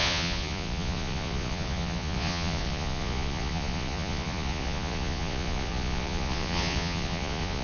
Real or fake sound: fake